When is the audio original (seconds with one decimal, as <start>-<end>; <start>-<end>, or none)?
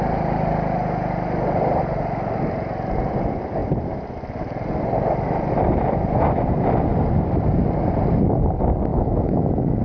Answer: 0.0-8.9